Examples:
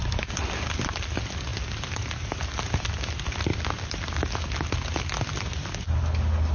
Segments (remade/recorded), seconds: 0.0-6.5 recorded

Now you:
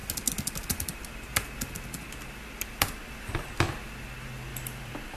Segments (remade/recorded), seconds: 0.0-4.5 recorded; 4.5-5.2 remade

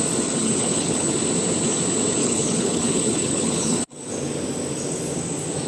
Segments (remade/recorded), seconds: 0.0-0.4 recorded; 0.4-1.1 remade; 1.1-2.2 recorded; 2.2-4.1 remade; 4.1-5.7 recorded

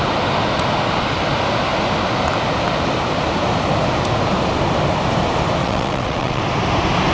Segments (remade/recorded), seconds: 0.0-5.6 recorded; 5.6-6.4 remade; 6.4-7.1 recorded

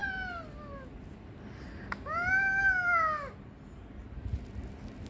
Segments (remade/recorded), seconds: 0.0-5.1 recorded